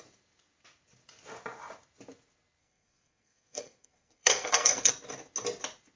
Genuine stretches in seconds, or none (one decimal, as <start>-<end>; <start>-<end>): 0.0-2.6; 4.9-6.0